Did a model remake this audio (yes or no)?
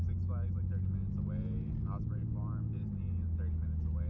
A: no